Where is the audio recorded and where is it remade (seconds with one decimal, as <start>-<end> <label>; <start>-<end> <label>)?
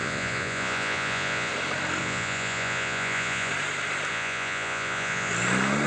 0.0-1.5 remade; 1.5-2.0 recorded; 2.0-3.5 remade; 3.5-4.1 recorded; 4.1-5.3 remade; 5.3-5.9 recorded